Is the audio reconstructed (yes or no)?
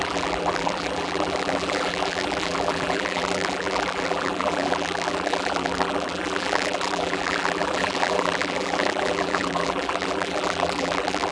yes